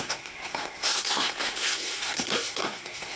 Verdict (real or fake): fake